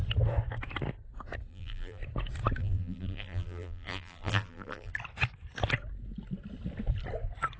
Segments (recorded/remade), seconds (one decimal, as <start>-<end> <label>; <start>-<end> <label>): 0.0-1.5 recorded; 1.5-2.0 remade; 2.0-2.6 recorded; 2.6-4.9 remade; 4.9-7.6 recorded